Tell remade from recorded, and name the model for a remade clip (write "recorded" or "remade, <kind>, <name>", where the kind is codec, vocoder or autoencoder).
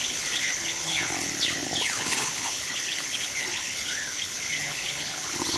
remade, codec, HILCodec